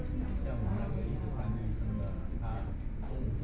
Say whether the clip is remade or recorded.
recorded